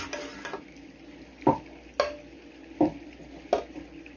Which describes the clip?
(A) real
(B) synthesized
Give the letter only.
A